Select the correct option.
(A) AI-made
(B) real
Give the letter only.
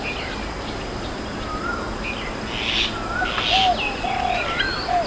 B